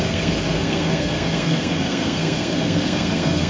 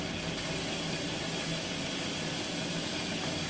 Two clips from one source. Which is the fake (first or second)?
first